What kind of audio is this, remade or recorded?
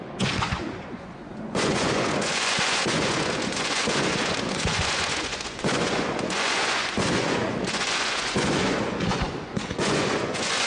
remade